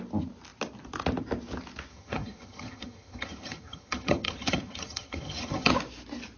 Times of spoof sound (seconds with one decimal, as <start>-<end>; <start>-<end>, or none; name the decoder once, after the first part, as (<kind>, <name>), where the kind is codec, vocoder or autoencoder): 1.9-5.7 (vocoder, HiFi-GAN)